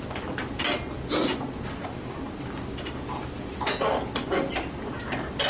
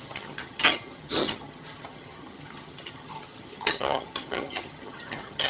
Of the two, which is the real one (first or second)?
first